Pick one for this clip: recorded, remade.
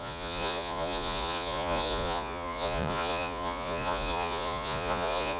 remade